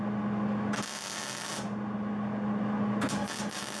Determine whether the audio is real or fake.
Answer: real